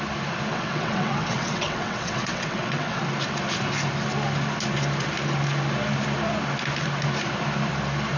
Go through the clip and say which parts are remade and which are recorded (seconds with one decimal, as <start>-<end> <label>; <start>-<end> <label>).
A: 0.0-0.5 recorded; 0.5-3.0 remade; 3.0-8.2 recorded